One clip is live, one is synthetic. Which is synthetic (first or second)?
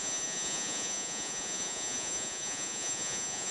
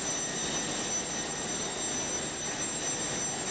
first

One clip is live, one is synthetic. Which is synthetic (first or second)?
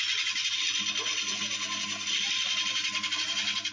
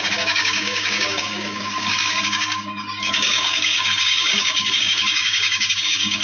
second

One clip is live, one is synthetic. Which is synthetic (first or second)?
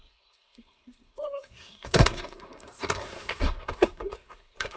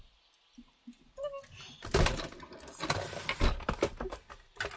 first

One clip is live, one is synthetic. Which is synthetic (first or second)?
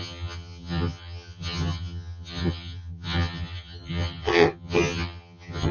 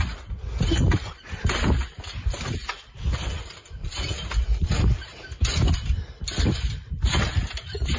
first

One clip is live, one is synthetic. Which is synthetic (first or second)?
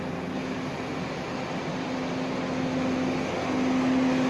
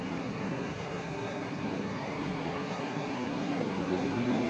second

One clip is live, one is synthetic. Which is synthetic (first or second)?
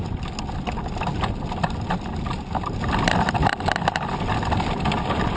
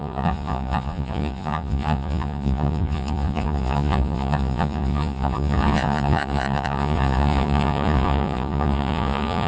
second